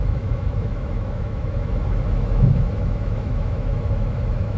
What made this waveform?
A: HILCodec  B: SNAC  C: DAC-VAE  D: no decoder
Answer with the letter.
C